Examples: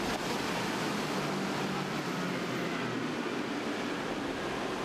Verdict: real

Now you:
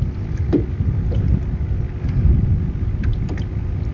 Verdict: real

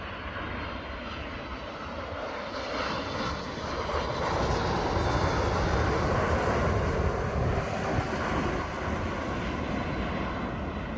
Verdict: real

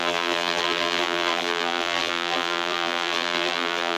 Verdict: fake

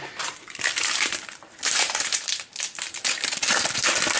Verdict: fake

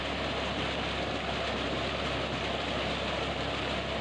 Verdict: real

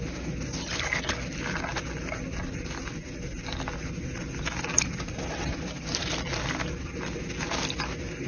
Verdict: real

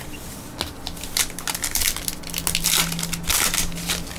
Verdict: real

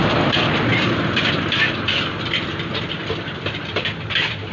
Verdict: fake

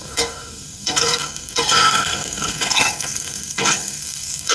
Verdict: fake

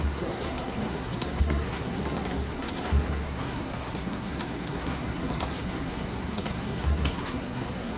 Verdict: fake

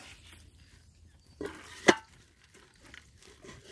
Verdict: real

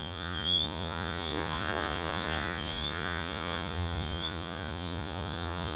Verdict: fake